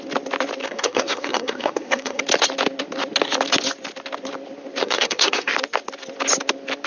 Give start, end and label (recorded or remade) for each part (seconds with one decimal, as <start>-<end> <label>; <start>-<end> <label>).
0.0-0.6 recorded; 0.6-2.2 remade; 2.2-4.8 recorded; 4.8-5.5 remade; 5.5-6.9 recorded